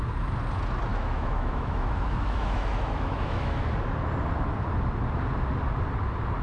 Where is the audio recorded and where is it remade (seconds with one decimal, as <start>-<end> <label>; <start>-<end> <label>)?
0.0-0.9 recorded; 0.9-3.6 remade; 3.6-6.4 recorded